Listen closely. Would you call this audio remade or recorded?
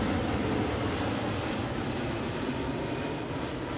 recorded